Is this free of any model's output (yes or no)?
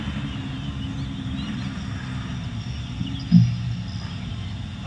yes